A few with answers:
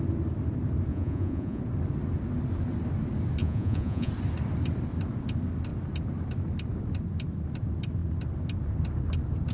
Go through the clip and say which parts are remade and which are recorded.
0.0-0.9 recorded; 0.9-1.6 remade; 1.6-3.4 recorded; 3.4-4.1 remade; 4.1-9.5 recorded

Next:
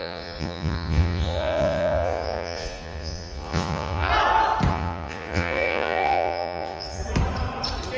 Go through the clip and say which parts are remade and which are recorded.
0.0-4.1 remade; 4.1-4.7 recorded; 4.7-7.0 remade; 7.0-8.0 recorded

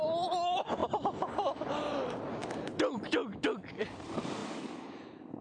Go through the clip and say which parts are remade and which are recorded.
0.0-2.4 remade; 2.4-3.8 recorded; 3.8-4.4 remade; 4.4-5.4 recorded

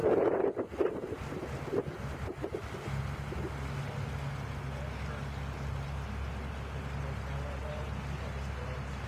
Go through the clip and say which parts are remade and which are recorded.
0.0-9.1 recorded

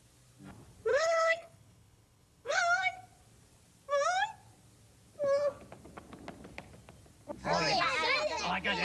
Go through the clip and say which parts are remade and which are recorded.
0.0-0.9 recorded; 0.9-2.6 remade; 2.6-8.8 recorded